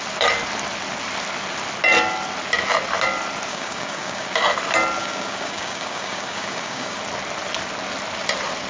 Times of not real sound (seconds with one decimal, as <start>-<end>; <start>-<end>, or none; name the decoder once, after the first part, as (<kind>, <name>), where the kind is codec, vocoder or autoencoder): 3.5-4.4 (codec, DAC); 5.0-7.0